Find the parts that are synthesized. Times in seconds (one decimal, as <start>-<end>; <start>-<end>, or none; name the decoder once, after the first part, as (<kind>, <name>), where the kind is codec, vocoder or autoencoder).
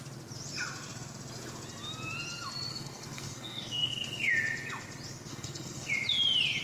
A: 2.7-4.3 (codec, SNAC); 5.3-5.9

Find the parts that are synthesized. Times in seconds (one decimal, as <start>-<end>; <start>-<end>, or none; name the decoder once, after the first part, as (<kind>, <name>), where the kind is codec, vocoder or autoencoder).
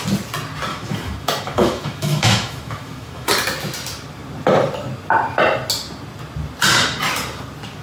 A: 0.7-3.3 (autoencoder, DAC-VAE)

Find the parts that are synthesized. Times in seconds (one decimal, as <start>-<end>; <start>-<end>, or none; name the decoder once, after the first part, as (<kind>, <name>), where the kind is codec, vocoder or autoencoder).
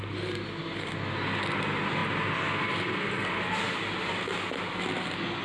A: none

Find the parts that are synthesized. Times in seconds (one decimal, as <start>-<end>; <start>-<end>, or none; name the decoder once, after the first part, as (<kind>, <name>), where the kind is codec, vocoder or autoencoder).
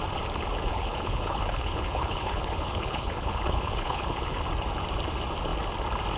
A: 0.7-4.4 (codec, HILCodec)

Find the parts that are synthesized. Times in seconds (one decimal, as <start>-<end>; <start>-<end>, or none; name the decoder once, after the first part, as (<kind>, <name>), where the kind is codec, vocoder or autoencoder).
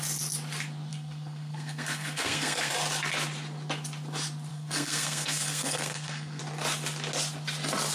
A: 0.9-2.7 (codec, SNAC); 4.5-6.4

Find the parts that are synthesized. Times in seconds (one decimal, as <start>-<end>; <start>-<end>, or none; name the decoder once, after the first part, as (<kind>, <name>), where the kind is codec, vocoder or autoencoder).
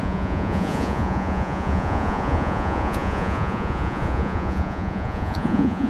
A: 0.0-5.9 (vocoder, Vocos)